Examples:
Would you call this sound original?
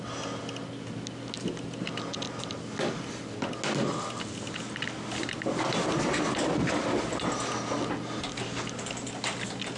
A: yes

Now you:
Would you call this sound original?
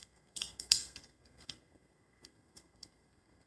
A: no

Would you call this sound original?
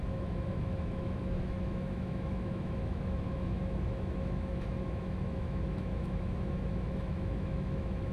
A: no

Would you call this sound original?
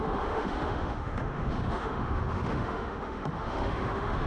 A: no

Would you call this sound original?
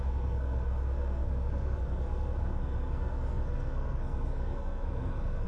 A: no